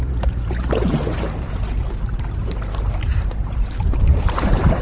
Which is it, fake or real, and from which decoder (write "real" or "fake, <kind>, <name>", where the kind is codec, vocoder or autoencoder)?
fake, vocoder, BigVGAN v2